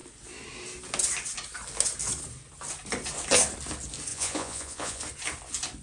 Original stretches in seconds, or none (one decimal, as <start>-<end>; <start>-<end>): 0.0-4.1; 5.0-5.8